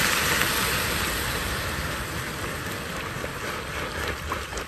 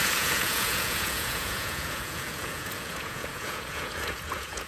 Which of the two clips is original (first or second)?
first